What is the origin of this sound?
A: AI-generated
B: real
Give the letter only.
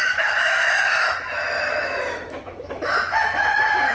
A